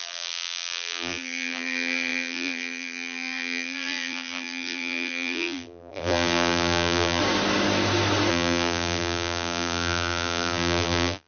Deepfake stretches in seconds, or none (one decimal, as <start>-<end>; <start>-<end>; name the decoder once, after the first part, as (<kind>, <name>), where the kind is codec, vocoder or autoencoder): 0.0-7.2 (vocoder, BigVGAN v2); 8.3-11.3